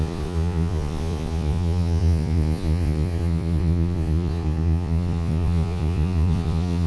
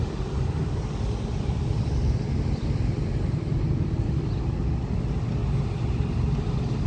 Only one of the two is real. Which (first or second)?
second